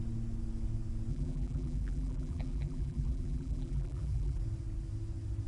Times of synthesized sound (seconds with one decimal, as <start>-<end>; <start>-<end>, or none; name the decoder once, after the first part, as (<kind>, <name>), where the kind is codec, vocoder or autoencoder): 1.1-4.4 (vocoder, BigVGAN v2)